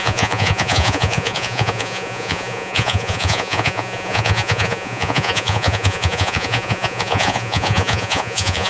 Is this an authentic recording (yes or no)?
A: no